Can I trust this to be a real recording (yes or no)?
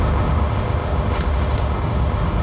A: no